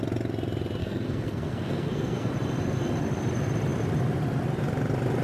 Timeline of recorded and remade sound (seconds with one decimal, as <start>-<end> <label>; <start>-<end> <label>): 0.0-0.8 recorded; 0.8-2.3 remade; 2.3-5.2 recorded